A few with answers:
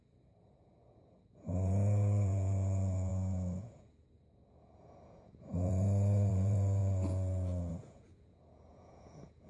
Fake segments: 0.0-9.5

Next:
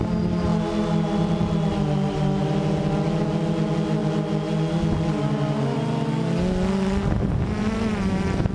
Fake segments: none

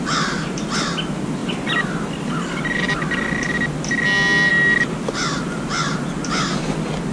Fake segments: none

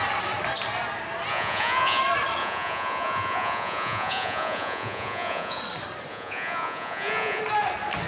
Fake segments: 1.3-2.0; 2.4-5.6; 6.1-7.4

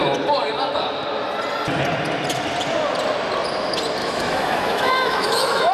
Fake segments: 4.0-5.7

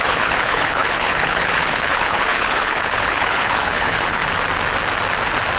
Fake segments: 0.0-4.2

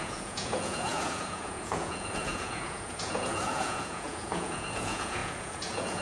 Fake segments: 0.0-6.0

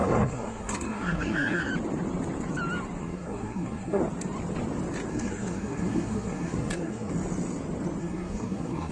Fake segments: 0.0-1.7; 3.0-4.0; 5.1-7.1; 8.0-8.9